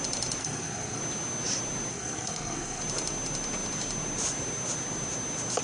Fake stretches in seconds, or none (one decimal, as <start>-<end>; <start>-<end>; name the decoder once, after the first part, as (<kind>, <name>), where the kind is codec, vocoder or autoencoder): 0.4-1.0 (codec, SNAC); 1.9-2.8